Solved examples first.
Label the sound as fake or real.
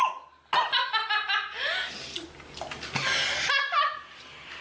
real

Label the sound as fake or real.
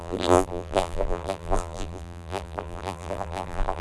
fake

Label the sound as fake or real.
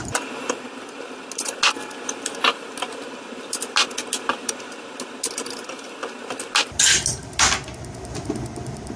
real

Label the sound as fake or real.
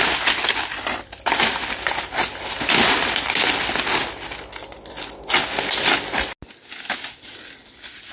real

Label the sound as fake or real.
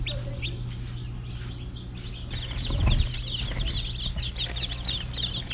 real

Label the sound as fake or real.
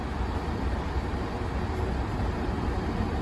fake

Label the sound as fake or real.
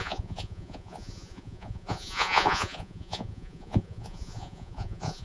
fake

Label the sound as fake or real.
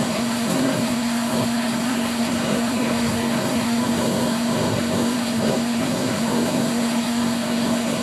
fake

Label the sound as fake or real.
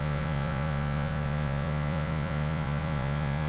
fake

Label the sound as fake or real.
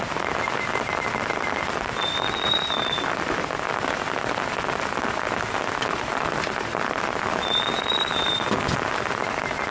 real